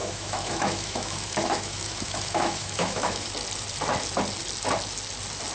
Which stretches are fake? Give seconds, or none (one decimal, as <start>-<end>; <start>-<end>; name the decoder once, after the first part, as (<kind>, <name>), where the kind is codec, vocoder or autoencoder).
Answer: 0.0-3.3 (autoencoder, DAC-VAE)